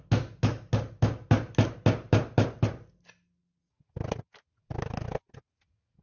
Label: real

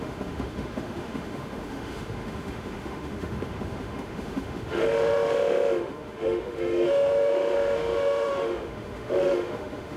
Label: fake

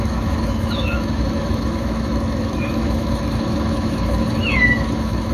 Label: fake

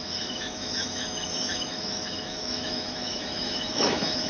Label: fake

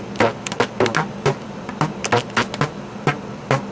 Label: real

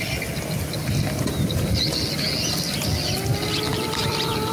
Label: real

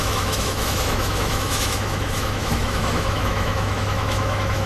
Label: fake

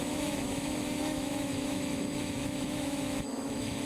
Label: fake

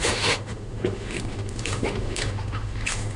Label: fake